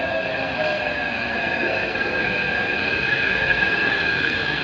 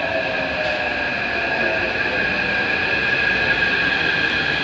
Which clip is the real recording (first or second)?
second